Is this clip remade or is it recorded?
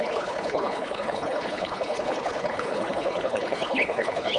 remade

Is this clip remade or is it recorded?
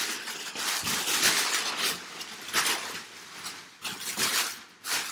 recorded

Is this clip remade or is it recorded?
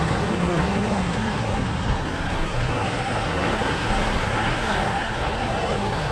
remade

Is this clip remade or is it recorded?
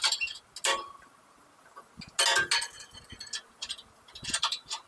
recorded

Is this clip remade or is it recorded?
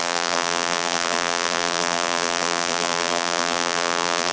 remade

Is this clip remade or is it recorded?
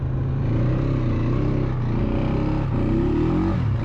recorded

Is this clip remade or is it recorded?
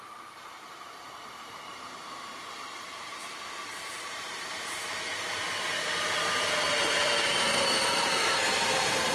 remade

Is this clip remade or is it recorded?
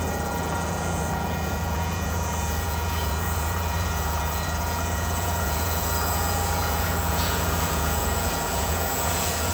remade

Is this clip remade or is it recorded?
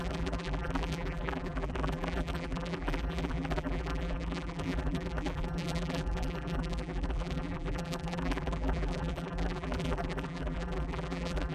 remade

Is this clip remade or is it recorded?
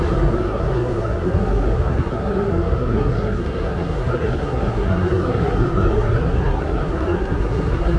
remade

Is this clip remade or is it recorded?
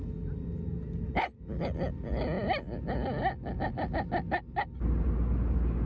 recorded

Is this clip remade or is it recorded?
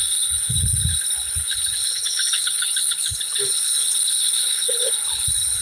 remade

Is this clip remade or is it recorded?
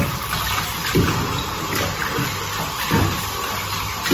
recorded